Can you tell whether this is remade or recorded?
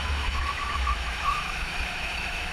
remade